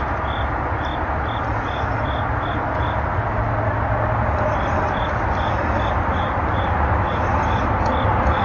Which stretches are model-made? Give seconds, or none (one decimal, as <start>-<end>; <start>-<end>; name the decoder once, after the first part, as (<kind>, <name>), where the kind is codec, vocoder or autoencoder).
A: none